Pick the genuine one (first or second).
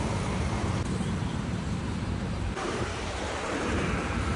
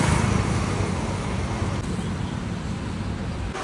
second